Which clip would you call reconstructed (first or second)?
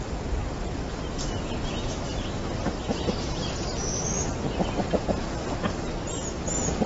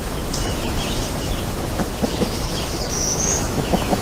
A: second